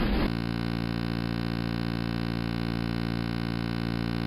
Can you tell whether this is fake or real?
real